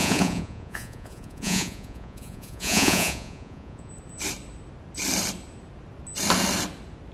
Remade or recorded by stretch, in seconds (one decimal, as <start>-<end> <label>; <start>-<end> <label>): 0.0-3.9 remade; 3.9-7.1 recorded